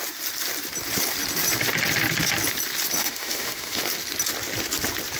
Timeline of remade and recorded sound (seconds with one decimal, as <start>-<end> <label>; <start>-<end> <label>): 0.0-3.0 recorded; 3.0-3.8 remade; 3.8-5.2 recorded